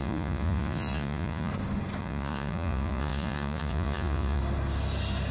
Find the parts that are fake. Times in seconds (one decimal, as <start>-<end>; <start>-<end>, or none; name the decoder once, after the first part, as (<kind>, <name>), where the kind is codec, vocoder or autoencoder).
0.0-1.5 (vocoder, Vocos); 2.0-4.4